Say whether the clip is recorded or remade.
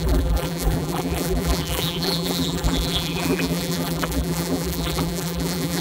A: remade